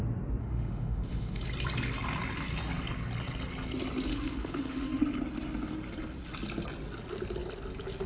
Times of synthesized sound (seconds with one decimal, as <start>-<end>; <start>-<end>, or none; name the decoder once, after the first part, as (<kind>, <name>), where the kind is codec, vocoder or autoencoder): 0.4-1.4 (autoencoder, DAC-VAE); 4.1-5.0